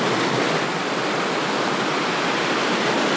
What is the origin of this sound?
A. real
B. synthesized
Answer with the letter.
A